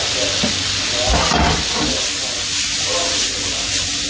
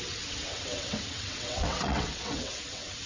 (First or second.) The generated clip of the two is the second